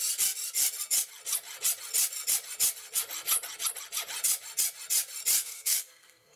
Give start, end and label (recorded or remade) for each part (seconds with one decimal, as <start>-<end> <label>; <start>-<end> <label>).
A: 0.0-5.4 recorded; 5.4-6.4 remade